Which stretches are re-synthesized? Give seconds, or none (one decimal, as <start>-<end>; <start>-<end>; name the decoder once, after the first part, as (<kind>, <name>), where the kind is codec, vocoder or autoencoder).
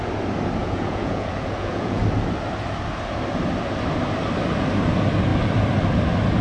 0.6-2.0 (vocoder, Vocos)